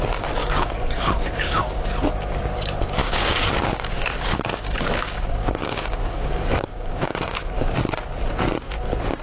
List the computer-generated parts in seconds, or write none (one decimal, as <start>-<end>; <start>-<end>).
0.4-1.8; 3.0-7.7